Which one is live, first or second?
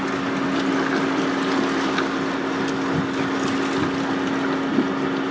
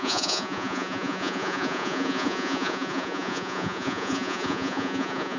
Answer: first